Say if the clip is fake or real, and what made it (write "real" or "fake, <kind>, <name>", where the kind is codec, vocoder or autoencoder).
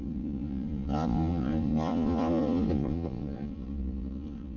fake, vocoder, Vocos